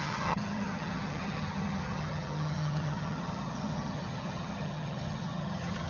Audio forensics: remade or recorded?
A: remade